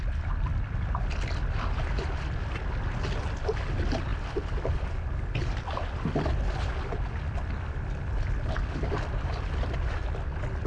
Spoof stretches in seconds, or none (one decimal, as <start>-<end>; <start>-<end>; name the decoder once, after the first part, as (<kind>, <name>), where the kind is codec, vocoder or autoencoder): 4.1-4.9 (vocoder, BigVGAN v2)